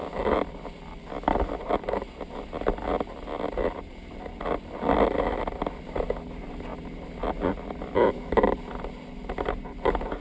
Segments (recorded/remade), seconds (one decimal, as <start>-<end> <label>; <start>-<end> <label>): 0.0-10.2 recorded